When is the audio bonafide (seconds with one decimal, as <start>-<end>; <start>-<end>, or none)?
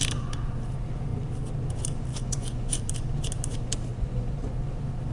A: 0.0-2.1; 2.8-3.9; 4.6-5.1